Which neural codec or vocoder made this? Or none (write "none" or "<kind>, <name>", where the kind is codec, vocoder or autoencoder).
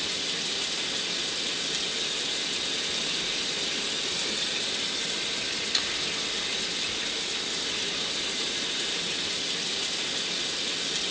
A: none